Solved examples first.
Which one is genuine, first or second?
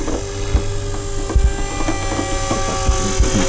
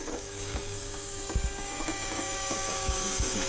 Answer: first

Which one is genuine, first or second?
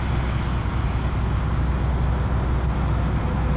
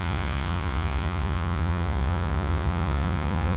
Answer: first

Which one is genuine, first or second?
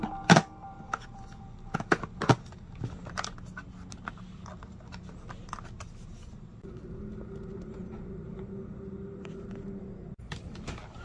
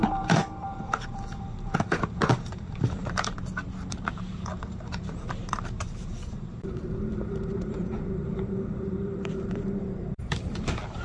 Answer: first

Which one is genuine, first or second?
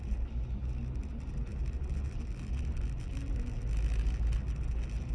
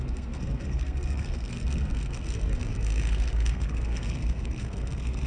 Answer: first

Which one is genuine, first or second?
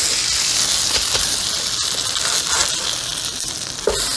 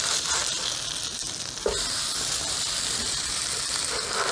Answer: first